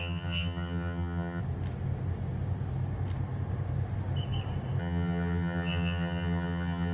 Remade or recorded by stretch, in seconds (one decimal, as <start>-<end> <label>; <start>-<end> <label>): 0.0-1.4 remade; 1.4-4.8 recorded; 4.8-6.9 remade